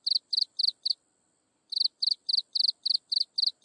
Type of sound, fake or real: real